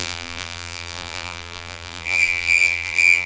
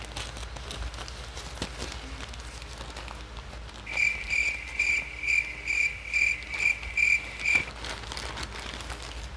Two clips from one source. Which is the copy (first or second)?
first